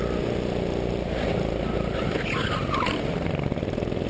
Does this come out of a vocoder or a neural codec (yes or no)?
no